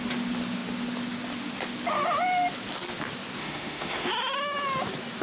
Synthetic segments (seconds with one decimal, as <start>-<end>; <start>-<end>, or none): 3.4-4.1